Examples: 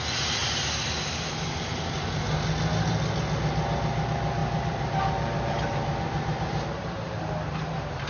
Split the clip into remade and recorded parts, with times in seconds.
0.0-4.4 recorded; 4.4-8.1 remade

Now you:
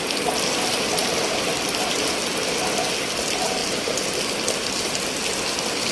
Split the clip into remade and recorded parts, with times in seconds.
0.0-5.9 recorded

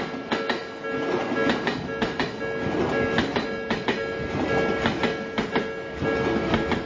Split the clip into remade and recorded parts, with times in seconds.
0.0-6.9 recorded

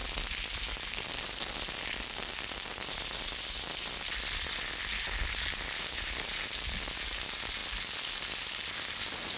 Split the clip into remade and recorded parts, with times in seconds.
0.0-9.4 recorded

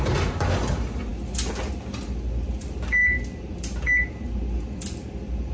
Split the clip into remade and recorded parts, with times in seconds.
0.0-5.5 recorded

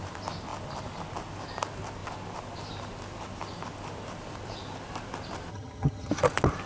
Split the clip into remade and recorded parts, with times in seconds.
0.0-5.5 recorded; 5.5-6.1 remade; 6.1-6.7 recorded